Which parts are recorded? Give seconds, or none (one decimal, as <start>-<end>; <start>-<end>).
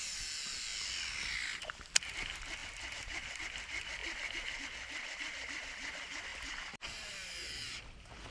0.0-8.3